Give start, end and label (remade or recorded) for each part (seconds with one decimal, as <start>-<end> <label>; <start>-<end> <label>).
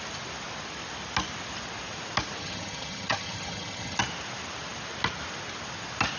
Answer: 0.0-2.4 recorded; 2.4-4.0 remade; 4.0-6.2 recorded